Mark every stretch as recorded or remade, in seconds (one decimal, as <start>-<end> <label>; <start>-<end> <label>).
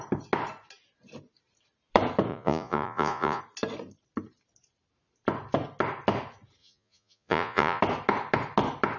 0.0-2.3 recorded; 2.3-3.4 remade; 3.4-6.6 recorded; 6.6-7.8 remade; 7.8-9.0 recorded